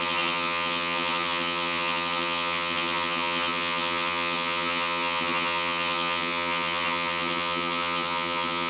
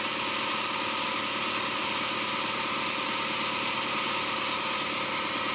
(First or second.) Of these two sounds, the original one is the second